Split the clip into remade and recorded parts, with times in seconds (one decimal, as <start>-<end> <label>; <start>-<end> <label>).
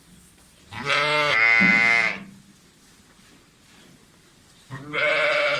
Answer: 0.0-5.6 recorded